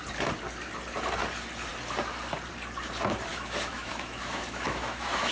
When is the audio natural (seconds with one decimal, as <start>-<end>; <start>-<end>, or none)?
0.0-3.3